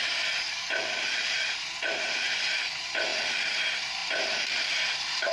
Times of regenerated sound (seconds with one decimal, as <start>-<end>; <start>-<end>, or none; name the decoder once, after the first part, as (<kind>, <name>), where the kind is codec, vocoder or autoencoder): 0.0-3.1 (vocoder, BigVGAN v2); 3.6-5.3